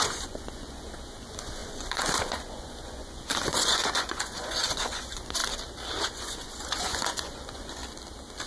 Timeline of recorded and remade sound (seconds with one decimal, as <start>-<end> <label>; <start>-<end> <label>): 0.0-5.4 remade; 5.4-6.1 recorded; 6.1-7.8 remade; 7.8-8.5 recorded